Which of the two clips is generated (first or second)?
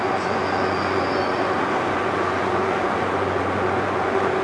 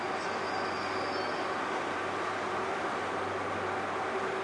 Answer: first